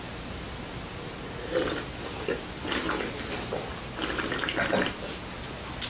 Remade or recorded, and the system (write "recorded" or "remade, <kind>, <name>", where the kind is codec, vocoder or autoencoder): recorded